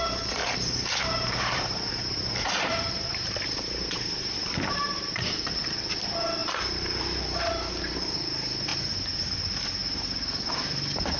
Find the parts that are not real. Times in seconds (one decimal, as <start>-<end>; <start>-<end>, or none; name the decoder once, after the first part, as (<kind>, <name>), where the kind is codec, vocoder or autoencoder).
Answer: 0.4-5.6 (vocoder, BigVGAN v2)